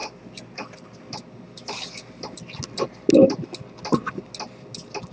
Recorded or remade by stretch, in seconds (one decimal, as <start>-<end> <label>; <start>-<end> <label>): 0.0-5.1 recorded